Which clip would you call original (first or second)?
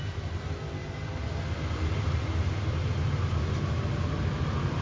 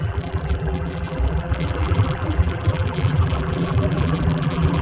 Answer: first